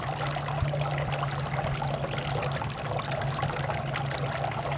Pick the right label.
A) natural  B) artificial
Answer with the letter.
A